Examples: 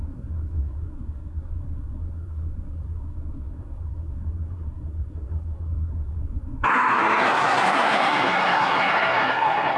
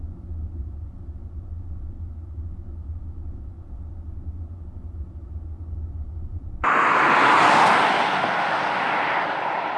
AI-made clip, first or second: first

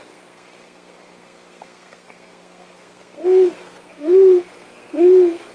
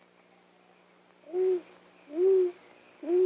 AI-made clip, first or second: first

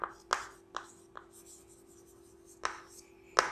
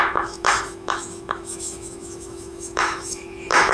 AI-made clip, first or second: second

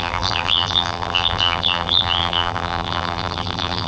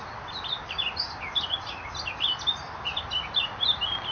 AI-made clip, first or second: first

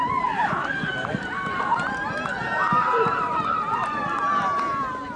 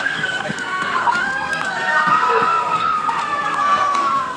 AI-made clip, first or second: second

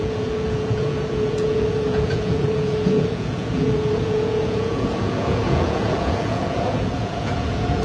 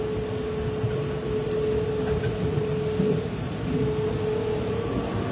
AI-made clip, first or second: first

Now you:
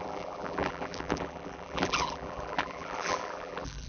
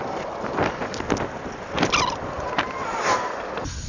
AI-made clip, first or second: first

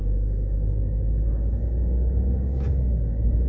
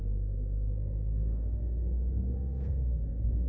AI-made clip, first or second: second